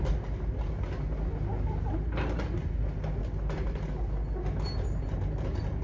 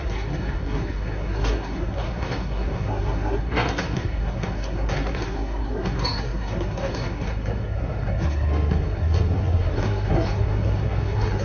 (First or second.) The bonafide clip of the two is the first